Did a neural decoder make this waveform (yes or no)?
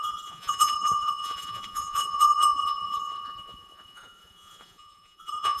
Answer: yes